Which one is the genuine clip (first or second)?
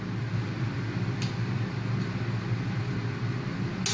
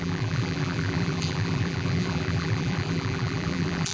first